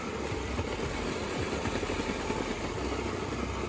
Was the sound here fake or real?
real